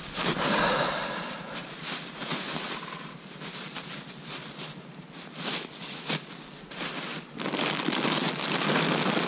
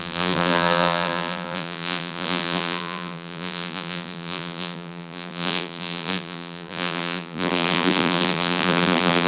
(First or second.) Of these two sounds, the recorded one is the first